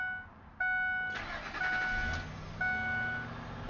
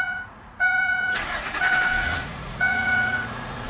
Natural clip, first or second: first